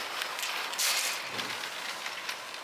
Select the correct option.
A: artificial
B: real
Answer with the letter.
B